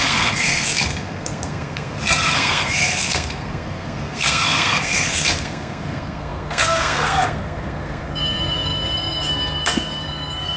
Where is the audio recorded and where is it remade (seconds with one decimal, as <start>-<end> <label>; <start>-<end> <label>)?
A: 0.0-10.6 remade